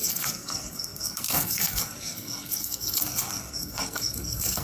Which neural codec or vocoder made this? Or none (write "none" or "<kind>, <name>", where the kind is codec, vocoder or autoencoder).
codec, SNAC